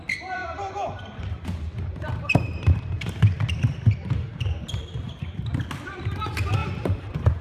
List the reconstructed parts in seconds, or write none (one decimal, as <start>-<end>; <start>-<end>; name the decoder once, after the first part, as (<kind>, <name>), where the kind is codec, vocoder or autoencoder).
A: 0.4-4.8 (vocoder, BigVGAN v2); 6.6-7.4